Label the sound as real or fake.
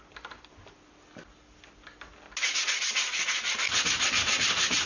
real